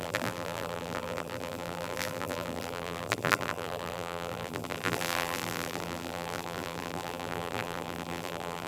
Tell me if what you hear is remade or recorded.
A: remade